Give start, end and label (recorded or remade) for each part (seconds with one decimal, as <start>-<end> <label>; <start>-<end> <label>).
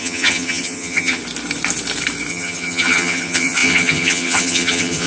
0.0-1.2 remade; 1.2-2.3 recorded; 2.3-5.1 remade